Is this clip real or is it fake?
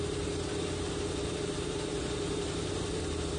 real